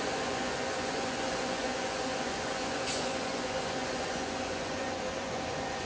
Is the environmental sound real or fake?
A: fake